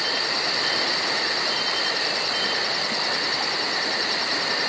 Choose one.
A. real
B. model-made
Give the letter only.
A